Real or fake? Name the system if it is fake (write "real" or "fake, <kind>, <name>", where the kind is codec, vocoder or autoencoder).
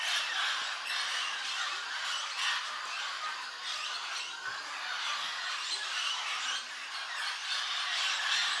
real